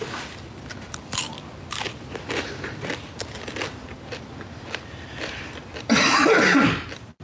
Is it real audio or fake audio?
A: fake